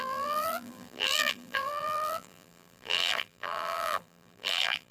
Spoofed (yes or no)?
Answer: yes